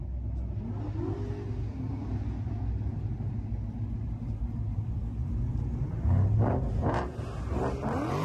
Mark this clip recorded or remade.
recorded